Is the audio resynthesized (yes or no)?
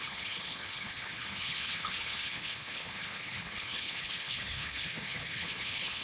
yes